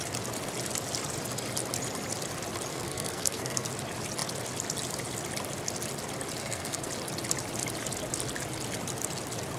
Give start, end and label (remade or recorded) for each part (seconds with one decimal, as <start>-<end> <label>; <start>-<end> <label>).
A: 0.0-2.7 recorded; 2.7-3.7 remade; 3.7-6.4 recorded; 6.4-6.9 remade; 6.9-9.6 recorded